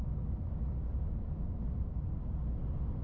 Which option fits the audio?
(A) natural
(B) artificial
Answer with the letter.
A